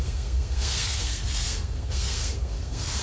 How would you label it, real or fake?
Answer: fake